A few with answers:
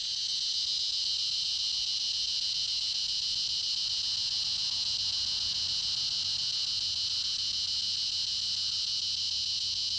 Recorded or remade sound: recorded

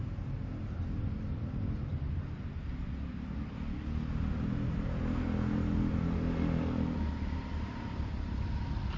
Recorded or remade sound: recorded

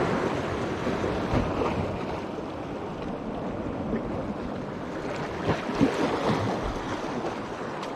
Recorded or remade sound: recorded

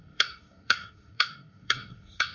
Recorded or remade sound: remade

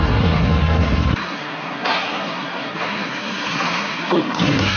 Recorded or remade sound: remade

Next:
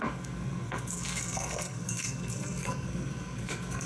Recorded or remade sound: remade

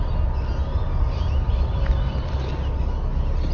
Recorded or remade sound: recorded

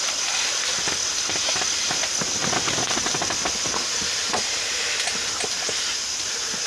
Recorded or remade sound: recorded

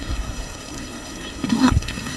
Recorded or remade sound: remade